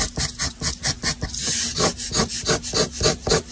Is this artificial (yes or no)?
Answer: no